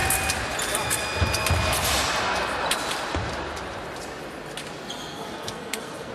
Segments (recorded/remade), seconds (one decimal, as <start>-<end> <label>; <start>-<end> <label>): 0.0-5.1 recorded; 5.1-6.1 remade